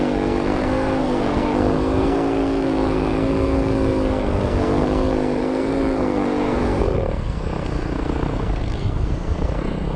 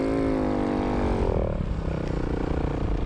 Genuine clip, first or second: second